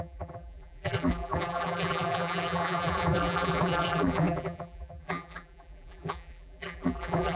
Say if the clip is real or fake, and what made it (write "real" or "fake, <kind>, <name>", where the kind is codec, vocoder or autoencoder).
fake, vocoder, BigVGAN v2